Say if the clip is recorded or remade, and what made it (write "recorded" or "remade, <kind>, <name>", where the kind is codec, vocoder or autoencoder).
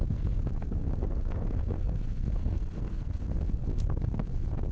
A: remade, codec, SNAC